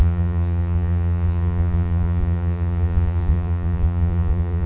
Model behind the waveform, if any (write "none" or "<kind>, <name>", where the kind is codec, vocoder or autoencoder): vocoder, Vocos